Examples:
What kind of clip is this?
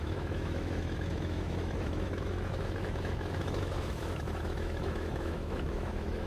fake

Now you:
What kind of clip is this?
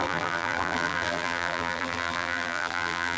fake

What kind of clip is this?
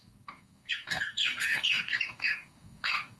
fake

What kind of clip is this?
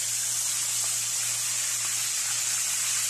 real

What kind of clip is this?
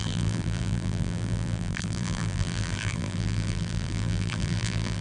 fake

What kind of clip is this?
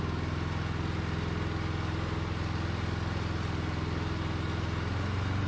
real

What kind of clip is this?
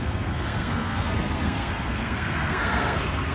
fake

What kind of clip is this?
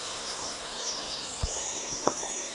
fake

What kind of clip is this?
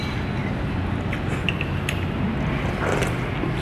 real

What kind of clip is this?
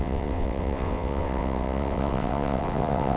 fake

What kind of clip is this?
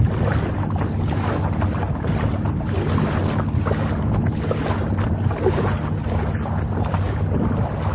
real